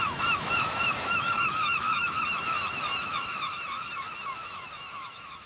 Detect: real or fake fake